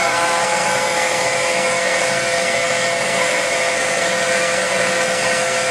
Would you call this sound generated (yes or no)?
yes